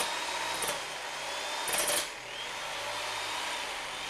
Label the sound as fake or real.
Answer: real